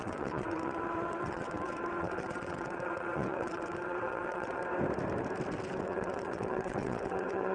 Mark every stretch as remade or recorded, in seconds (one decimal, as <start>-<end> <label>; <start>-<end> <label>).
0.0-4.6 remade; 4.6-5.8 recorded; 5.8-7.5 remade